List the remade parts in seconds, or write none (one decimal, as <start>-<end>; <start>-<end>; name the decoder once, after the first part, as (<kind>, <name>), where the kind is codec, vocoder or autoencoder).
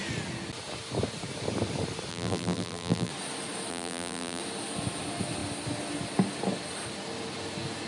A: 2.1-3.1 (vocoder, BigVGAN v2); 3.7-4.4